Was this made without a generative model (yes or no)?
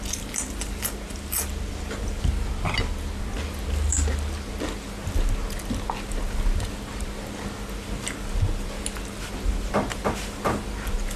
yes